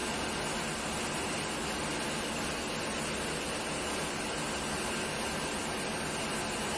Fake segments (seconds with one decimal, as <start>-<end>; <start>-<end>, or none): none